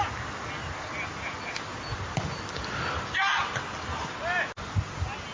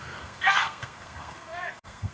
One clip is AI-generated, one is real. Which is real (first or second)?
first